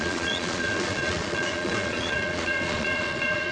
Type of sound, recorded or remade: remade